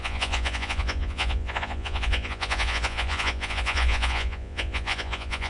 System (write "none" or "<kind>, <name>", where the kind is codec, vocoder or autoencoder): vocoder, Vocos